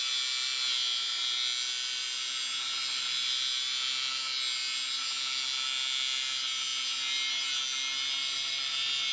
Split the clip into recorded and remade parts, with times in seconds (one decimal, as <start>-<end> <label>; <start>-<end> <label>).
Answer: 0.0-9.1 recorded